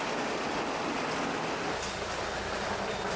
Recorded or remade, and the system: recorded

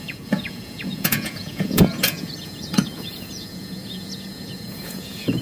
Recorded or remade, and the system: remade, vocoder, Vocos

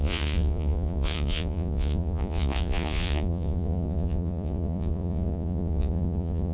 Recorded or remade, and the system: remade, vocoder, Vocos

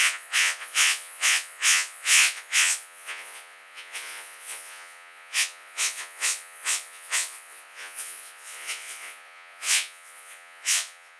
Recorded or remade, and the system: remade, vocoder, Vocos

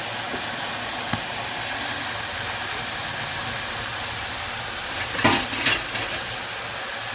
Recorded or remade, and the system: recorded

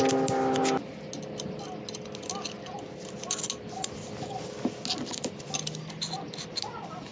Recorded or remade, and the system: recorded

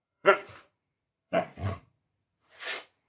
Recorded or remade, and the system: remade, vocoder, Vocos